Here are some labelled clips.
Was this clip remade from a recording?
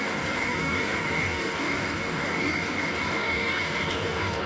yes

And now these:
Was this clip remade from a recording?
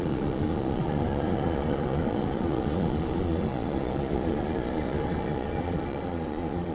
yes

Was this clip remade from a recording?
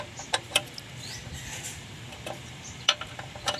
yes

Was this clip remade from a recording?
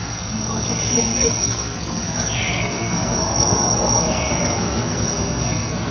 yes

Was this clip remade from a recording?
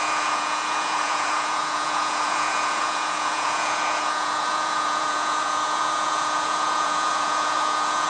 yes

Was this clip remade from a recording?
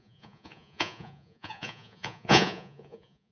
yes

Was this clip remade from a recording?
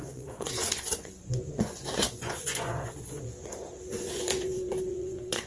yes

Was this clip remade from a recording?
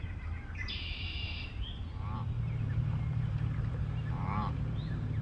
yes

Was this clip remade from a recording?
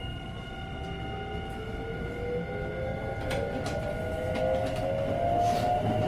no